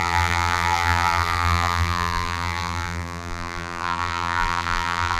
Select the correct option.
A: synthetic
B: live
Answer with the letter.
A